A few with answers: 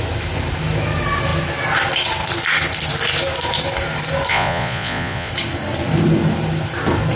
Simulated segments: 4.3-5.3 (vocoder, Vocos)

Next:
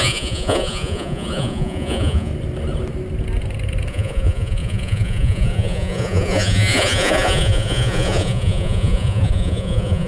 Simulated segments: 0.0-2.3 (vocoder, Vocos); 3.9-10.1

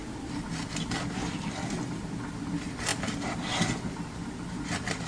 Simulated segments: none

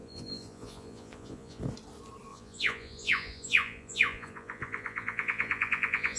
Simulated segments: 0.0-1.6 (vocoder, Vocos); 2.3-6.2

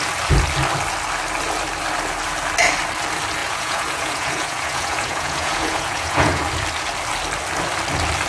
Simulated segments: 3.4-6.4 (vocoder, Vocos)